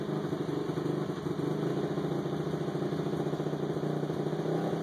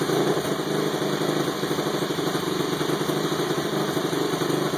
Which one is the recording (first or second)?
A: first